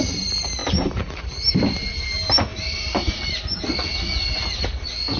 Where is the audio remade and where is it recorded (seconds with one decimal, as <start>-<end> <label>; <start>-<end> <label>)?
0.0-0.6 recorded; 0.6-1.5 remade; 1.5-2.5 recorded; 2.5-3.6 remade; 3.6-5.2 recorded